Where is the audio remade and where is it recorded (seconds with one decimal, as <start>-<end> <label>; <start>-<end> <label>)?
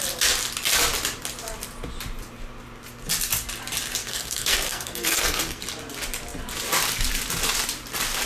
0.0-4.0 recorded; 4.0-5.6 remade; 5.6-8.3 recorded